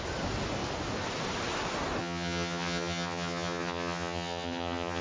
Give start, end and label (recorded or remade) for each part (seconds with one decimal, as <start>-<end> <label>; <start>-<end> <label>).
0.0-2.0 recorded; 2.0-5.0 remade